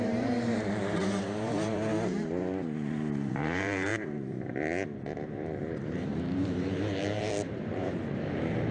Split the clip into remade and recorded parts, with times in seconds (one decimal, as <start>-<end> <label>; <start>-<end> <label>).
0.0-1.9 remade; 1.9-3.3 recorded; 3.3-8.7 remade